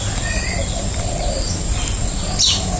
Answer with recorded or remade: recorded